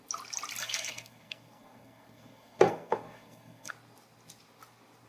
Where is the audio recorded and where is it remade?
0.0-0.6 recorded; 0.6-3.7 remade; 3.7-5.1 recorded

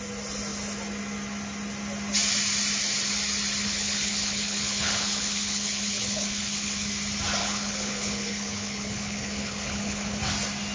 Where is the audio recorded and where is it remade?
0.0-3.6 recorded; 3.6-6.9 remade; 6.9-7.4 recorded; 7.4-10.2 remade; 10.2-10.7 recorded